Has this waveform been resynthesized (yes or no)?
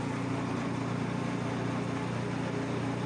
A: no